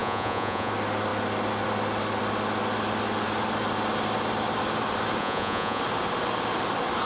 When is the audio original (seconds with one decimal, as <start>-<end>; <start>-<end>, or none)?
0.7-5.2; 5.8-7.1